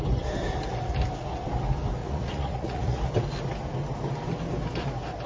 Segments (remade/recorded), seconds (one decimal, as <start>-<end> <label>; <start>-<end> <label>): 0.0-2.0 recorded; 2.0-3.0 remade; 3.0-5.3 recorded